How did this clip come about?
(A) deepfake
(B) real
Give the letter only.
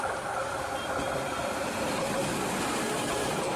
A